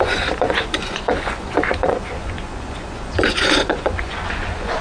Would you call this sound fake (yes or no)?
yes